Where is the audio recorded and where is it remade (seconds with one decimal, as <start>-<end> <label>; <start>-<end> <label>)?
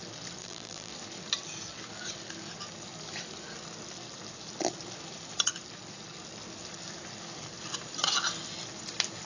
0.0-0.4 recorded; 0.4-0.9 remade; 0.9-9.2 recorded